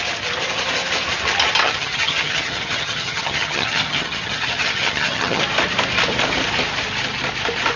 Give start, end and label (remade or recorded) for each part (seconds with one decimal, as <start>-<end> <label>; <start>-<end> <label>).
0.0-1.6 recorded; 1.6-5.4 remade; 5.4-7.8 recorded